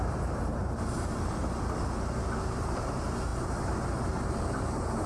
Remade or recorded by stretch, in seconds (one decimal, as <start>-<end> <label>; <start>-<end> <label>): 0.0-1.4 remade; 1.4-2.4 recorded; 2.4-3.3 remade; 3.3-4.3 recorded; 4.3-5.1 remade